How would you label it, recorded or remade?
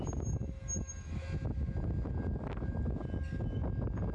recorded